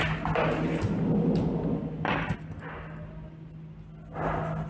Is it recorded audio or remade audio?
recorded